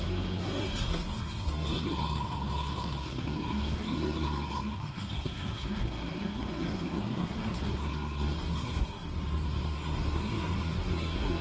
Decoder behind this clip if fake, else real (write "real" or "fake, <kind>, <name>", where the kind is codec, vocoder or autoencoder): fake, codec, SNAC